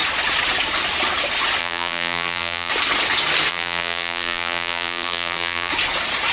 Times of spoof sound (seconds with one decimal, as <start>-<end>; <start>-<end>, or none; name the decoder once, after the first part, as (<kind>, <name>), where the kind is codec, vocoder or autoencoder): 1.6-2.7 (vocoder, BigVGAN v2); 3.5-5.7